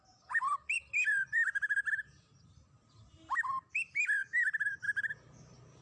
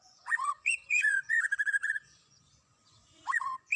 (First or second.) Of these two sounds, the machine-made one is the second